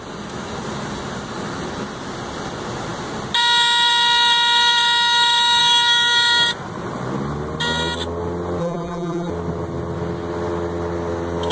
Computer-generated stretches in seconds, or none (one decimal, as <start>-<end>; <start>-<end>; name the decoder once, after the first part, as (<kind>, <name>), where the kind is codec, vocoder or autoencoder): 8.6-9.3 (vocoder, BigVGAN v2)